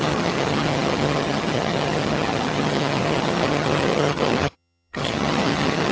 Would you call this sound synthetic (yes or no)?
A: yes